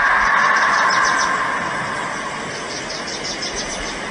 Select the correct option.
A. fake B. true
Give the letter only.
B